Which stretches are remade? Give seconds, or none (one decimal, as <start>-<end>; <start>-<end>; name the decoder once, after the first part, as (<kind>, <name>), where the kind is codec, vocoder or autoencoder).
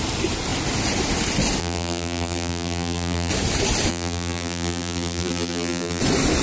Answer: 1.6-3.3 (vocoder, BigVGAN v2); 3.9-6.0